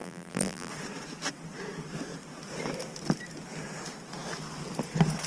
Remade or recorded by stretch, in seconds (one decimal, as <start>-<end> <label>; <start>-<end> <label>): 0.0-0.7 remade; 0.7-5.3 recorded